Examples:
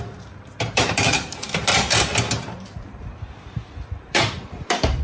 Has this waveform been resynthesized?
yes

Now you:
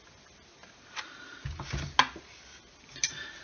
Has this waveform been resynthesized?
no